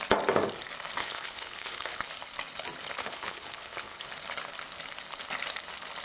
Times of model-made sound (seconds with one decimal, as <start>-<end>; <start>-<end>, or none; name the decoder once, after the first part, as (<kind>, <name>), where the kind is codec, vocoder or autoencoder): 1.0-2.0 (codec, HILCodec); 3.0-4.1